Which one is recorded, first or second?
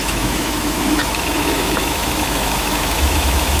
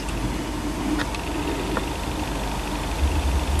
second